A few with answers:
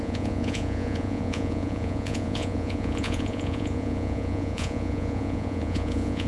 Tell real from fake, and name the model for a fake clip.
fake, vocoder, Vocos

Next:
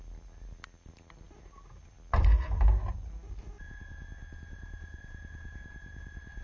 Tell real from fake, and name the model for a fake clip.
real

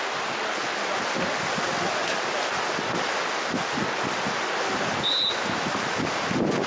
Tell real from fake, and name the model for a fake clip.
real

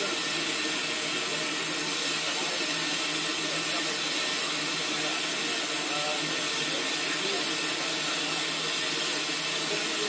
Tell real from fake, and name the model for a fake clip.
real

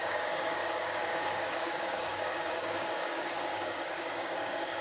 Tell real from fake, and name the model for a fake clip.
fake, codec, DAC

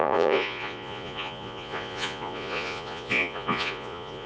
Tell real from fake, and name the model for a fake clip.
fake, vocoder, Vocos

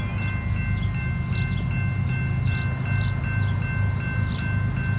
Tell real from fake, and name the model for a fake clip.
real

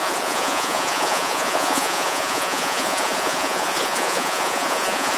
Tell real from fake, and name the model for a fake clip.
fake, vocoder, Vocos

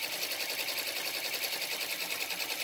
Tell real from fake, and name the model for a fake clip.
real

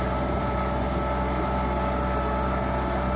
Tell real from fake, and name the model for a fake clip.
real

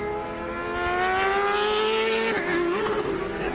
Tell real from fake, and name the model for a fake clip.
real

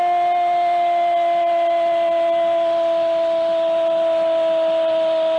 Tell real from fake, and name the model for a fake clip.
real